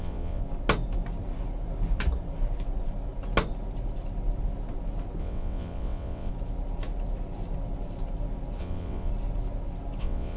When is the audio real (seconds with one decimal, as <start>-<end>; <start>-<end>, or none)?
0.4-5.2; 6.3-8.6; 9.1-10.0